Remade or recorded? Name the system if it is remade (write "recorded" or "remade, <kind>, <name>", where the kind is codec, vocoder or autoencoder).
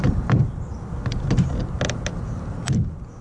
recorded